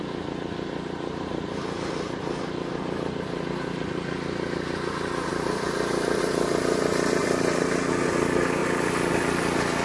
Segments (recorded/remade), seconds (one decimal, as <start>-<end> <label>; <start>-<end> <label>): 0.0-5.3 recorded; 5.3-6.2 remade; 6.2-9.8 recorded